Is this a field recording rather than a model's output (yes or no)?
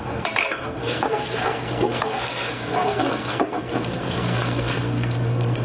no